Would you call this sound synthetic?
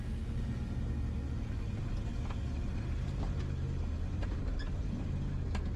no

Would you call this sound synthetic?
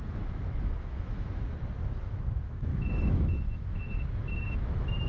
yes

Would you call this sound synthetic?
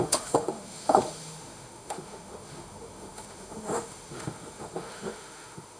yes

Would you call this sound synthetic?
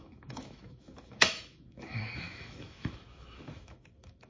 yes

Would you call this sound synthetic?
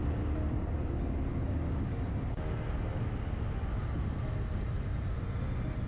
no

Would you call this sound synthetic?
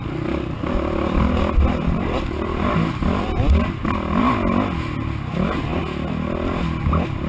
no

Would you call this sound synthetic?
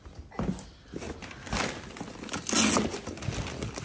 no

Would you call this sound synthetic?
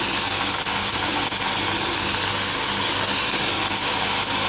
no